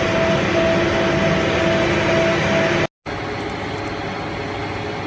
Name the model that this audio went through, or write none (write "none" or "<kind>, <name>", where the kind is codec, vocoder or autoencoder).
none